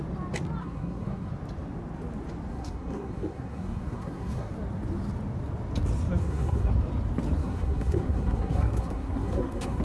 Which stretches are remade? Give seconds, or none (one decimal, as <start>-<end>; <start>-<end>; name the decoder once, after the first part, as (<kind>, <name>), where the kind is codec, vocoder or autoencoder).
0.6-1.3 (codec, SNAC); 2.5-4.5; 6.2-6.7; 7.4-9.8